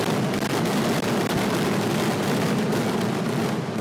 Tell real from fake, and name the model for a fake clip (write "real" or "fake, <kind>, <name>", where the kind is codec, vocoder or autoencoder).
real